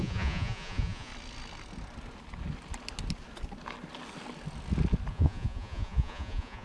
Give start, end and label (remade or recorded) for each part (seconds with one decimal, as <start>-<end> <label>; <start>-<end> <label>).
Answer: 0.0-1.1 remade; 1.1-5.1 recorded; 5.1-6.6 remade